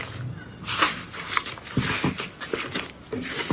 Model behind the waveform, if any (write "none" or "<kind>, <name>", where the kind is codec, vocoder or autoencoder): none